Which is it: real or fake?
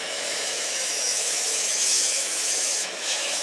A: fake